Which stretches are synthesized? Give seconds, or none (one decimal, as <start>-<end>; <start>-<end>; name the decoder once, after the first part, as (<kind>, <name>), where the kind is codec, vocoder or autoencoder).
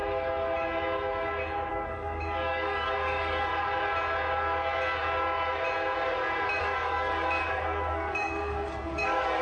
1.7-3.5 (codec, DAC); 6.6-9.4